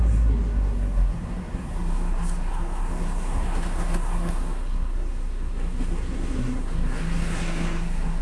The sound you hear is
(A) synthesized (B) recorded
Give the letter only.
A